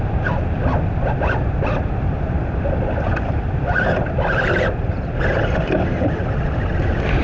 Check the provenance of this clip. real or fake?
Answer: real